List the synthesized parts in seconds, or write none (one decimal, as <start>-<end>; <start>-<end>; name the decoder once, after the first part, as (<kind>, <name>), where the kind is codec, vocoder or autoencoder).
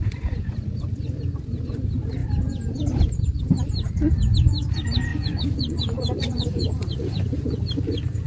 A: 5.1-7.6 (vocoder, Vocos)